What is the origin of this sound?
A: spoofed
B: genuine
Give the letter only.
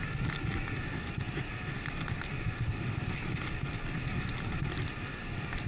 B